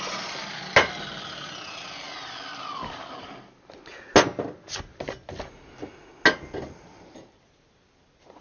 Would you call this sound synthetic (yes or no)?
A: no